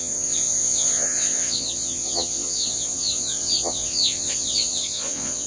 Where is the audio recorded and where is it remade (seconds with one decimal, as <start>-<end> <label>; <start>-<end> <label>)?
0.0-5.5 remade